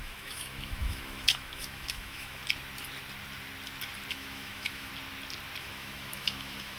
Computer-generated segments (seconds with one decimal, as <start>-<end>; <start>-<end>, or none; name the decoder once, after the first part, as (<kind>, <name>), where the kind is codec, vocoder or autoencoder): 0.0-2.4 (autoencoder, DAC-VAE); 4.1-4.9; 5.6-6.8